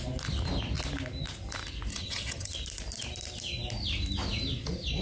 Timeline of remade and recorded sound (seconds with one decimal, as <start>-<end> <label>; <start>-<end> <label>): 0.0-1.9 recorded; 1.9-2.5 remade; 2.5-5.0 recorded